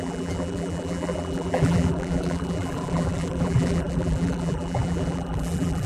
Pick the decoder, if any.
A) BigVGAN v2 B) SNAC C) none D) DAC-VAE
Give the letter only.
A